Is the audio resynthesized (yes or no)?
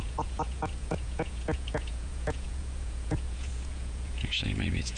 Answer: yes